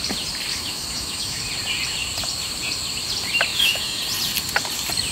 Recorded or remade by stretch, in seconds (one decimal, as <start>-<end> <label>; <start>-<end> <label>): 0.0-0.5 recorded; 0.5-1.4 remade; 1.4-3.5 recorded; 3.5-4.0 remade; 4.0-5.1 recorded